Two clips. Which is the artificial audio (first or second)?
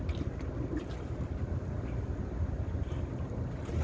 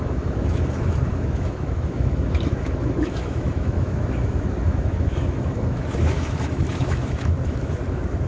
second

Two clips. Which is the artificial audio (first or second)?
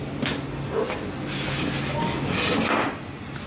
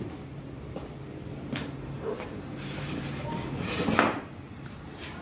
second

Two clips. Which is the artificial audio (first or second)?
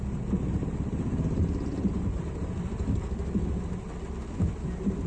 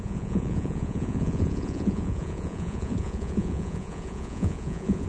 second